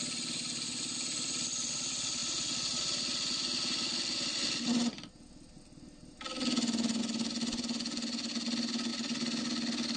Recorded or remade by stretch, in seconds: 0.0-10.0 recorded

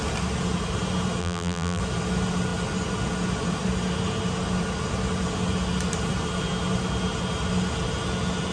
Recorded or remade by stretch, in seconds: 0.0-1.2 recorded; 1.2-1.8 remade; 1.8-8.5 recorded

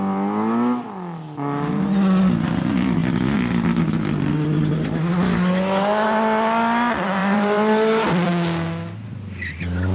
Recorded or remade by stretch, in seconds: 0.0-7.2 recorded; 7.2-8.3 remade; 8.3-9.9 recorded

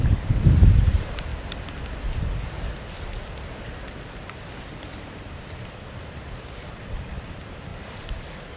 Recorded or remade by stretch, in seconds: 0.0-1.3 remade; 1.3-6.4 recorded; 6.4-8.6 remade

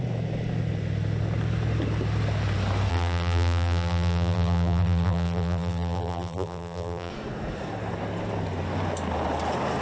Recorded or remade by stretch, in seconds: 0.0-2.9 recorded; 2.9-7.1 remade; 7.1-9.8 recorded

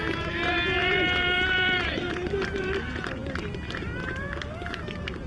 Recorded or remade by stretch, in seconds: 0.0-0.8 recorded; 0.8-2.0 remade; 2.0-5.3 recorded